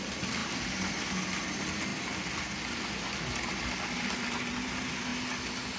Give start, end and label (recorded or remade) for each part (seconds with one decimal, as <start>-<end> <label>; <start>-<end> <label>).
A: 0.0-5.8 recorded